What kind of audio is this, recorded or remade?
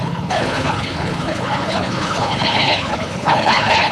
remade